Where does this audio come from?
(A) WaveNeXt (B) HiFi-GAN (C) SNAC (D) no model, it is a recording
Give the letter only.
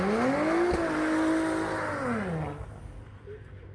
D